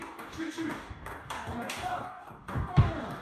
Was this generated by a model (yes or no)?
yes